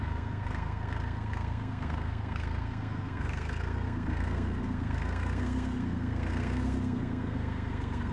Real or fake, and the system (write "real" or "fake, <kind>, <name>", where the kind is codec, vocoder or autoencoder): fake, codec, SNAC